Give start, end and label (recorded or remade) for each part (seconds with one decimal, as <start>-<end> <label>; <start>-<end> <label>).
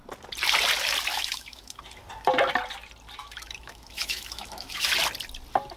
0.0-1.1 recorded; 1.1-1.8 remade; 1.8-3.2 recorded; 3.2-4.9 remade; 4.9-5.8 recorded